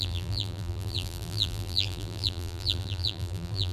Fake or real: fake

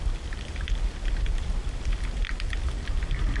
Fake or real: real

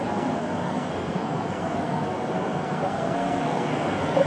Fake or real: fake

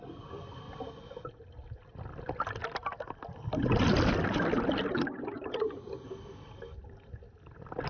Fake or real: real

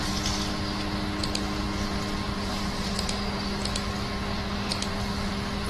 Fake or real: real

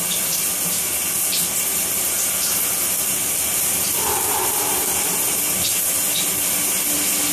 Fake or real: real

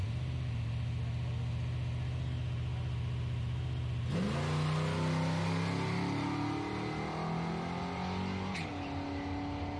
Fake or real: real